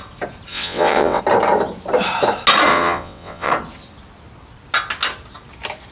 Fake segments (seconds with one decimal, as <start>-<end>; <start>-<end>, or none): 0.5-1.2; 2.7-3.5